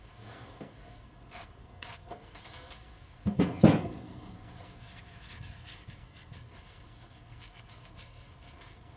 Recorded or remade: remade